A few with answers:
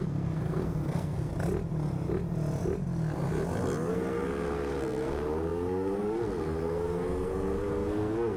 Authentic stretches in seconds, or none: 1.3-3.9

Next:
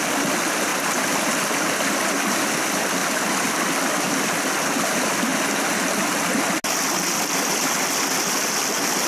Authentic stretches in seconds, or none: 0.0-0.7; 2.4-3.0; 4.2-9.1

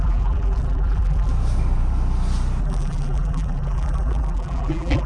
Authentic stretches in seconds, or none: 1.3-2.6

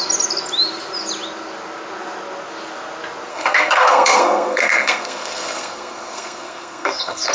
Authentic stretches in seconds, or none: 0.0-3.3

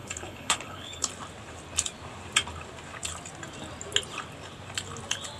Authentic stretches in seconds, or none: 1.1-5.4

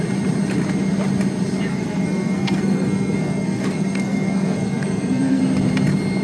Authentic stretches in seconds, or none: 0.0-1.7; 5.4-6.2

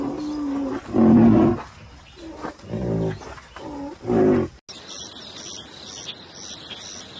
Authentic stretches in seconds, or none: 0.0-7.2